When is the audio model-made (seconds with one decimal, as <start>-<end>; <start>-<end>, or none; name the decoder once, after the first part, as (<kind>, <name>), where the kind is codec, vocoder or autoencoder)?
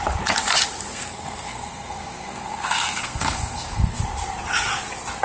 0.9-4.0 (codec, SNAC)